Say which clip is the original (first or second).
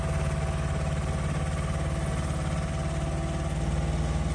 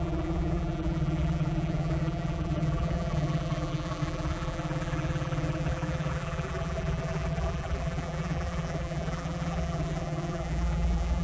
first